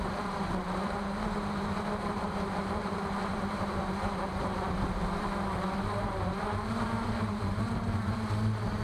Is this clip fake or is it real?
fake